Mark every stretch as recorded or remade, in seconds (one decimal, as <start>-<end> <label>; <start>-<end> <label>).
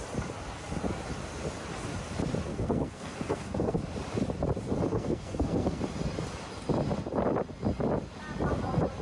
0.0-2.5 recorded; 2.5-3.8 remade; 3.8-4.9 recorded; 4.9-5.8 remade; 5.8-9.0 recorded